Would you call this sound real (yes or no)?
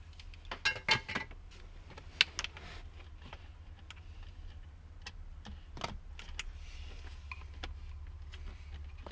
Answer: yes